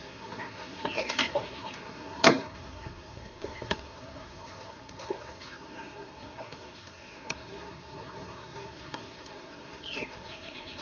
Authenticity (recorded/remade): remade